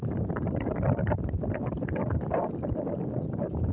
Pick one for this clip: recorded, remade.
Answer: recorded